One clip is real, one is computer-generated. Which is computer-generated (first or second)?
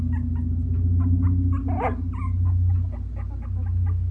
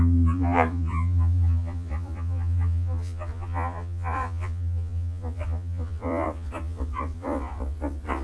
second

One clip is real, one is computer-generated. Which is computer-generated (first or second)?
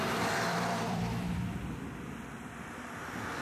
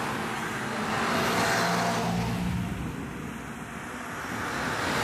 first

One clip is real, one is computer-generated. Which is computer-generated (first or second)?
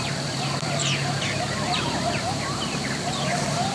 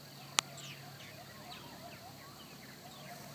first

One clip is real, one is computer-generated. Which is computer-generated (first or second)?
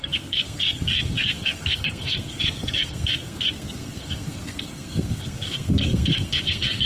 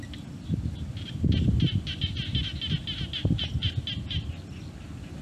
first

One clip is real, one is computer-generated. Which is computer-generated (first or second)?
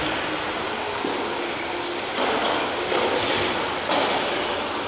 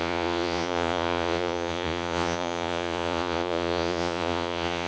second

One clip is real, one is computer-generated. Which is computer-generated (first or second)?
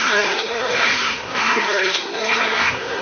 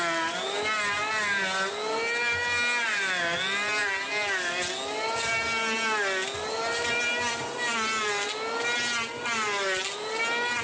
first